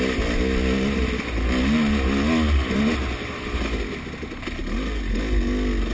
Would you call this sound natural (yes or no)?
yes